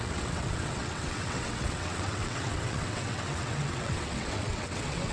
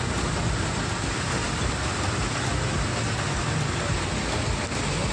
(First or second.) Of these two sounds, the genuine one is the second